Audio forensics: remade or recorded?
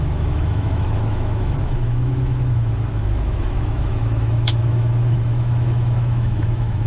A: remade